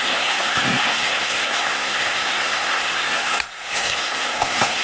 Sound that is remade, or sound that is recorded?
remade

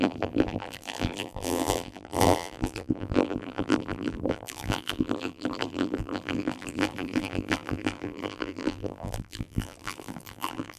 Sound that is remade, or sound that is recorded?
remade